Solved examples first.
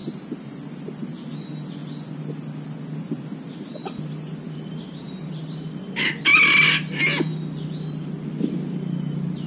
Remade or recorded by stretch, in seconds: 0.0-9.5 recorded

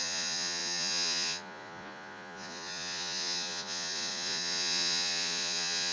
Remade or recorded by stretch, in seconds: 0.0-5.9 remade